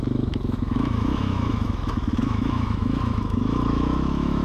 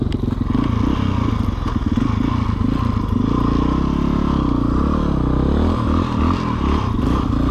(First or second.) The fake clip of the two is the first